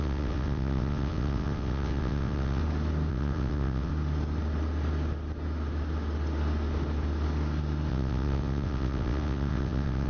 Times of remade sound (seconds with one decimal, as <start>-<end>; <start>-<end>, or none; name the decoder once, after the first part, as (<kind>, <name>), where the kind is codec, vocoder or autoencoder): 0.0-2.6 (vocoder, WaveNeXt); 3.1-3.9; 7.9-10.1